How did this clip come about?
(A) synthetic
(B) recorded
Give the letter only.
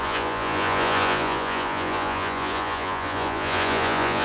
A